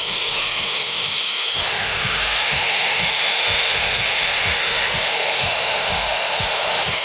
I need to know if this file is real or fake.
fake